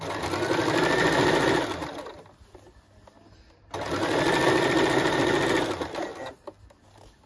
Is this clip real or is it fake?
real